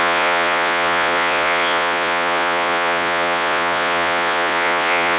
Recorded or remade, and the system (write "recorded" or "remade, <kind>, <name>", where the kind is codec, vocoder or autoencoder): remade, vocoder, Vocos